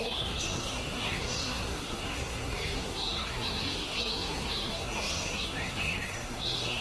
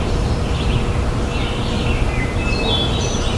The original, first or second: second